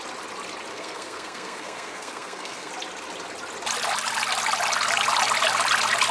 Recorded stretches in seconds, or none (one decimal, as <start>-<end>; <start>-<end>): 0.0-0.7; 2.7-6.1